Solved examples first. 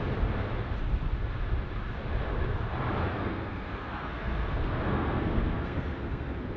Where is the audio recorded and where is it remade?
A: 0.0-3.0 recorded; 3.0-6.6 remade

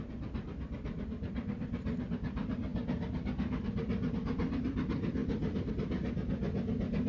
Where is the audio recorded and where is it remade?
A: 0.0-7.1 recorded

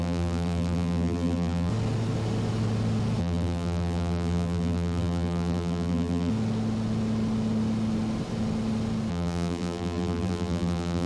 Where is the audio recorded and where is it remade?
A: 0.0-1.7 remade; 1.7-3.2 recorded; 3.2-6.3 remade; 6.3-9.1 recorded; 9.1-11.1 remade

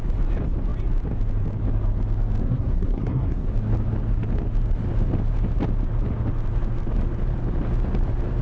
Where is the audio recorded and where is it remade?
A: 0.0-2.4 recorded; 2.4-3.5 remade; 3.5-8.4 recorded

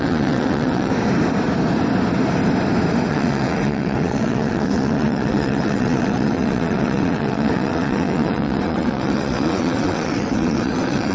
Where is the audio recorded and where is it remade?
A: 0.0-0.9 remade; 0.9-3.1 recorded; 3.1-11.1 remade

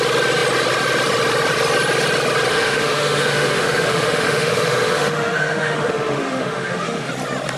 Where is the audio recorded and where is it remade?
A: 0.0-2.5 recorded; 2.5-7.1 remade; 7.1-7.6 recorded